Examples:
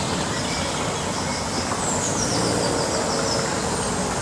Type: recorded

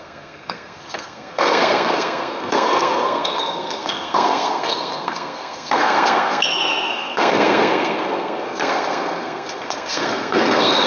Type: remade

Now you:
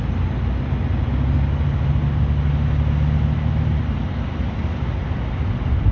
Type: recorded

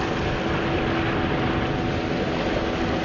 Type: recorded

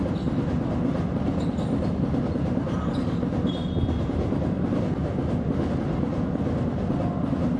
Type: recorded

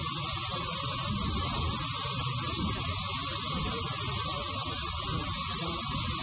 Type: recorded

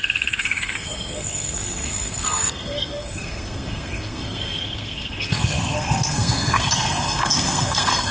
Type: remade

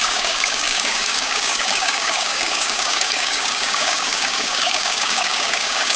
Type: remade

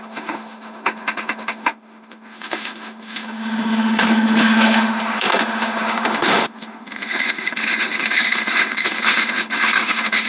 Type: remade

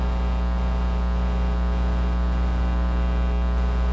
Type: recorded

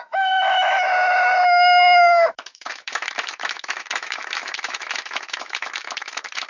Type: remade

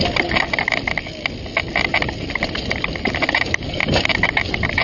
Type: recorded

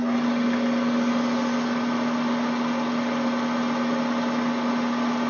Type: recorded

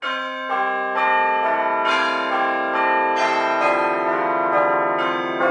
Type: recorded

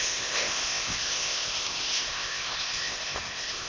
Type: remade